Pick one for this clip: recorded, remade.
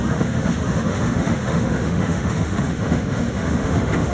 remade